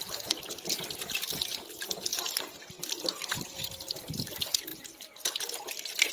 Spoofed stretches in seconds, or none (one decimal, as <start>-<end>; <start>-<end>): 2.1-3.3

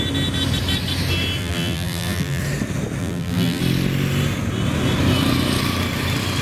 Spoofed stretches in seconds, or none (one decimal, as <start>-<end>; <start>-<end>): 1.4-2.4; 3.0-3.6

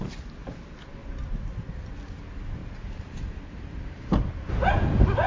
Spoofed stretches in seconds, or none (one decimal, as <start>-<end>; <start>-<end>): 1.0-1.7; 2.6-4.7

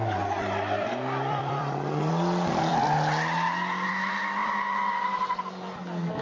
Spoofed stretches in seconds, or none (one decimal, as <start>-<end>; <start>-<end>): 0.0-2.1; 4.4-5.4

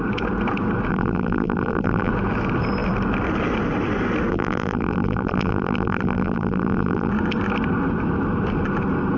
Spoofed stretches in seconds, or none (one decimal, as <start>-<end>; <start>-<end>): 0.9-2.1; 4.3-7.1